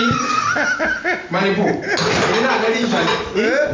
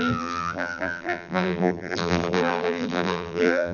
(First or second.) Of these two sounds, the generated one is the second